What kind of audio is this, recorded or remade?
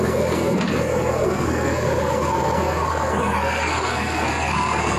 remade